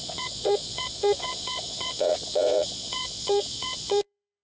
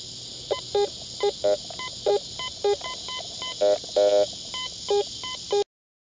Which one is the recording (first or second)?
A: second